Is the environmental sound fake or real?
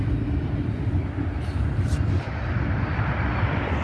real